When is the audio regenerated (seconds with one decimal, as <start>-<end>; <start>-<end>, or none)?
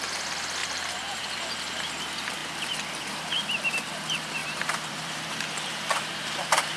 0.6-1.3; 4.4-6.8